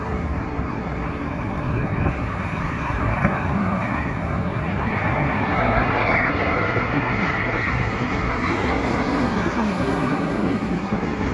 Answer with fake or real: fake